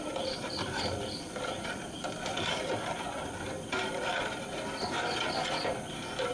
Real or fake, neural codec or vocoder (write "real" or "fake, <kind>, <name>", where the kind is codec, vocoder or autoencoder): fake, vocoder, BigVGAN v2